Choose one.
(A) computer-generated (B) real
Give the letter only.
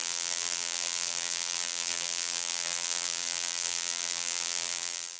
A